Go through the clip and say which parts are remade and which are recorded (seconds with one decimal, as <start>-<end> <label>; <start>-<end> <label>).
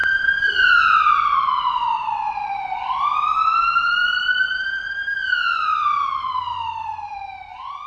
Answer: 0.0-0.8 remade; 0.8-4.1 recorded; 4.1-5.3 remade; 5.3-7.9 recorded